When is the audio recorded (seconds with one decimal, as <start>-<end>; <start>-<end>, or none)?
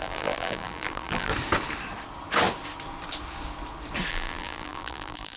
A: 1.3-4.1